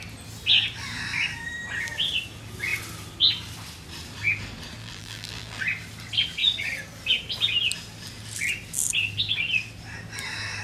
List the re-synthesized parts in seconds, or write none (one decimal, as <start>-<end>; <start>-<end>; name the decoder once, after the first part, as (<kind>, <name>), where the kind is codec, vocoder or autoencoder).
4.8-5.6 (vocoder, BigVGAN v2)